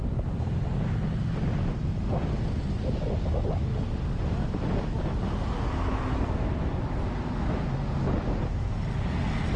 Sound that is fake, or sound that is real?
real